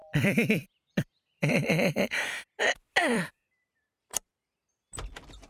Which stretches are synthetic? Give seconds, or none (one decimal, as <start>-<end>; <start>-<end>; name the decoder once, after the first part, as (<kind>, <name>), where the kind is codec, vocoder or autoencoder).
0.0-1.5 (vocoder, BigVGAN v2); 3.0-4.6